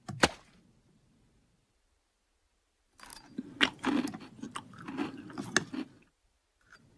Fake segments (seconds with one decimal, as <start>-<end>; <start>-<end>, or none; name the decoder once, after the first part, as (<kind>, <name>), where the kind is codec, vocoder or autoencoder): none